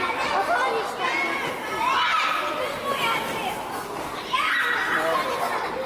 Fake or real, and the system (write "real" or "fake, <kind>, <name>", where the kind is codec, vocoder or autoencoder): real